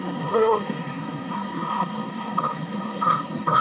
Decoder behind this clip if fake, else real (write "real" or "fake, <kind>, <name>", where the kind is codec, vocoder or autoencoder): fake, codec, SNAC